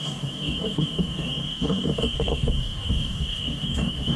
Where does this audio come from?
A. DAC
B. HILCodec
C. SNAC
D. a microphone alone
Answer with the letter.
A